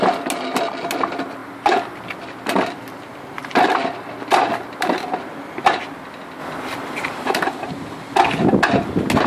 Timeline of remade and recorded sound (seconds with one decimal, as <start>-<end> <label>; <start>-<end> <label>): 0.0-1.4 recorded; 1.4-2.0 remade; 2.0-6.4 recorded; 6.4-7.3 remade; 7.3-9.3 recorded